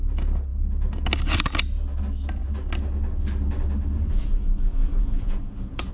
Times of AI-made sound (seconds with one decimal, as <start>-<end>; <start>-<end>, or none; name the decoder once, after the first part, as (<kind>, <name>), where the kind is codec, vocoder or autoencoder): 4.8-5.9 (vocoder, Vocos)